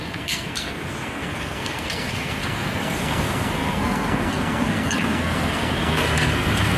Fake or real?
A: fake